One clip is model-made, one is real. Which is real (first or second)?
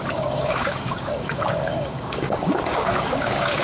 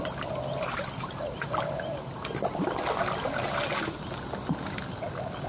second